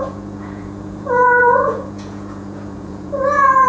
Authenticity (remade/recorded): remade